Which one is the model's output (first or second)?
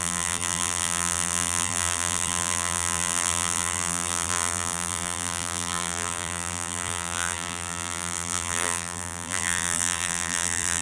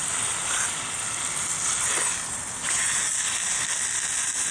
first